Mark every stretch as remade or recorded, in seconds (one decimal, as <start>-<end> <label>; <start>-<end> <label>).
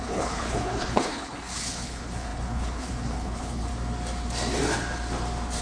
0.0-3.7 remade; 3.7-5.6 recorded